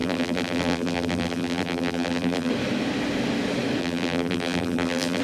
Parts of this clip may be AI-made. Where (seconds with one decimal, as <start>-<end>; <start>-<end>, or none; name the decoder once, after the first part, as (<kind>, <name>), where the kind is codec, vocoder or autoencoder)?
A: 0.0-2.5 (vocoder, BigVGAN v2); 3.8-5.2